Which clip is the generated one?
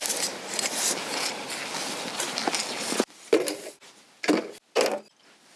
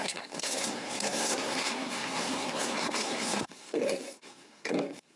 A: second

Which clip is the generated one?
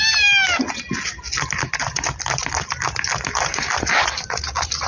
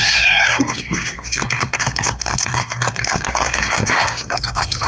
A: second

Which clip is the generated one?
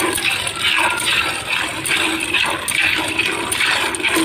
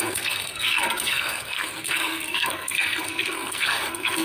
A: second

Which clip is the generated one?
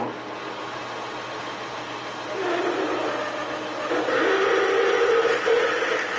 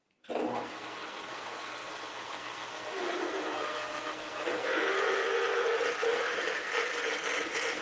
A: second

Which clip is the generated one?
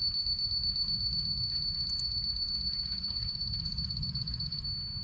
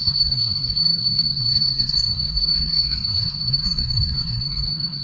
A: second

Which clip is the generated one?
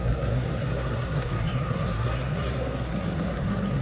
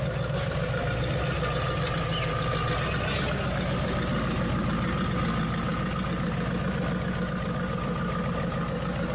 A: first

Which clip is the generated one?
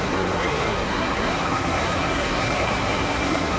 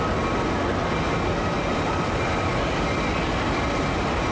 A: first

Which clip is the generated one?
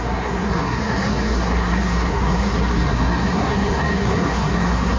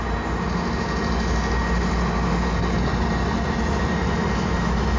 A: first